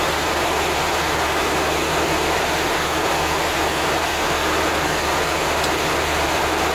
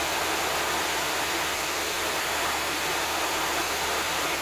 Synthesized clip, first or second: second